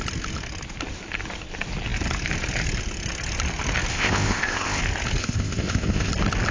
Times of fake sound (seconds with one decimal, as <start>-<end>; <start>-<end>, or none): 3.9-4.8; 5.2-6.1